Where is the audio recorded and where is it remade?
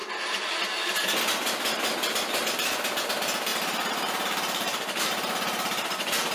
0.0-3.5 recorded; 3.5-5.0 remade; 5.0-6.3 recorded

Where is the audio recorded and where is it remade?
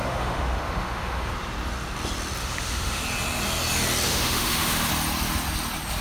0.0-1.3 remade; 1.3-2.4 recorded; 2.4-3.0 remade; 3.0-4.1 recorded; 4.1-4.9 remade; 4.9-6.0 recorded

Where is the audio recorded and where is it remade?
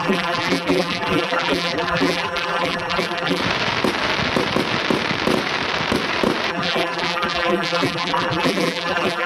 0.0-3.4 remade; 3.4-6.5 recorded; 6.5-9.3 remade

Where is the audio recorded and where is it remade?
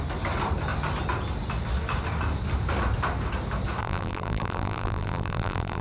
0.0-3.8 recorded; 3.8-5.8 remade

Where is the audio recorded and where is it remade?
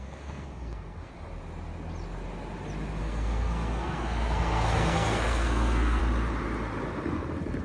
0.0-1.1 remade; 1.1-3.0 recorded; 3.0-6.0 remade; 6.0-7.6 recorded